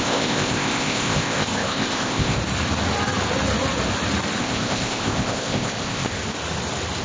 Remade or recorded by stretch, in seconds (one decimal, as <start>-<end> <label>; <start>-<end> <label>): 0.0-2.4 remade; 2.4-4.4 recorded; 4.4-6.2 remade; 6.2-7.0 recorded